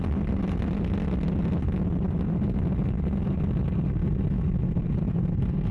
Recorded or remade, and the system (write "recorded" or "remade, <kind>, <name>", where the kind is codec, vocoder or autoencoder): recorded